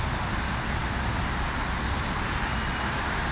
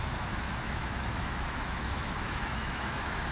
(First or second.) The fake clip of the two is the second